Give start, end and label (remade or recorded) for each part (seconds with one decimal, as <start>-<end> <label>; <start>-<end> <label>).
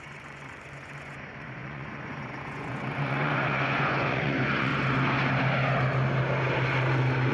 0.0-4.7 remade; 4.7-7.3 recorded